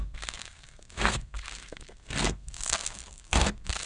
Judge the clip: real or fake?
fake